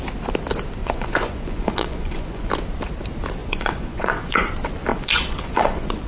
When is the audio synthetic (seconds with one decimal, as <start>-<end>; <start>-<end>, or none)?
0.8-2.5; 3.4-4.5; 4.9-6.1